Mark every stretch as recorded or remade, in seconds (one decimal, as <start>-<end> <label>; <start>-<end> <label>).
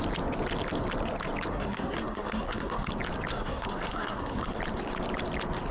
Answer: 0.0-1.5 recorded; 1.5-2.9 remade; 2.9-3.3 recorded; 3.3-4.6 remade; 4.6-5.7 recorded